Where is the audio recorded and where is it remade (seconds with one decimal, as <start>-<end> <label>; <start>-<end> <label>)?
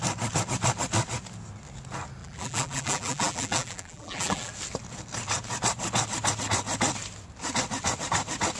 0.0-2.2 recorded; 2.2-4.5 remade; 4.5-8.6 recorded